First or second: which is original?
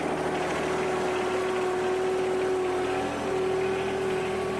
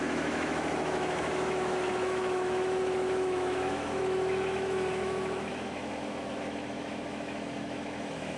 first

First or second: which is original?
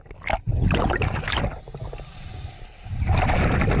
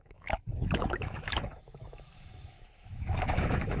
first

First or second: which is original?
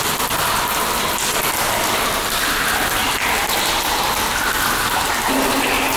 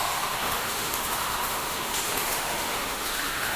first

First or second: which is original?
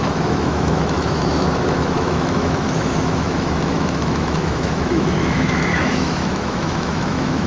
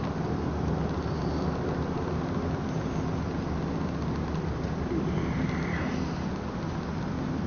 second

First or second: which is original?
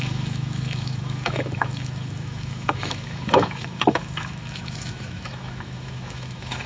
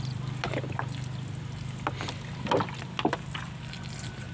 second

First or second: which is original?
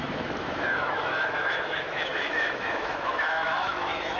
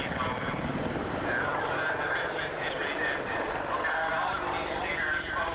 second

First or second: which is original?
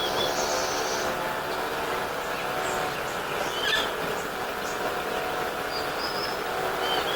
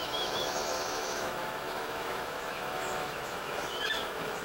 first